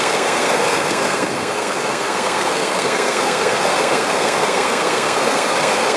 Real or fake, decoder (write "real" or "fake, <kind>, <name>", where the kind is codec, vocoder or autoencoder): fake, codec, SNAC